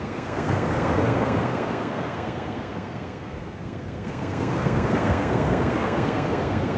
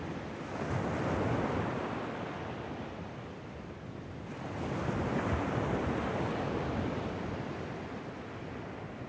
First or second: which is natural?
second